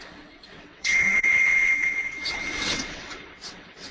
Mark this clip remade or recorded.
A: remade